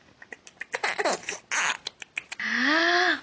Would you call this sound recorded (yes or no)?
yes